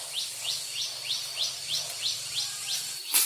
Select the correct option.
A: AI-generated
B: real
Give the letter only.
B